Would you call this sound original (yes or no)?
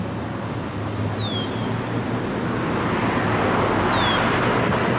yes